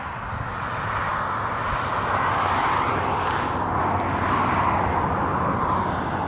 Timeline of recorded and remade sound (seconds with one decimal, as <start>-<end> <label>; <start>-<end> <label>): 0.0-6.3 recorded